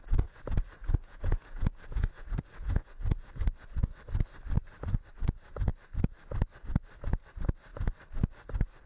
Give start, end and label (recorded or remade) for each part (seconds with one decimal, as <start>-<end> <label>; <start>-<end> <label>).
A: 0.0-0.8 recorded; 0.8-3.3 remade; 3.3-8.9 recorded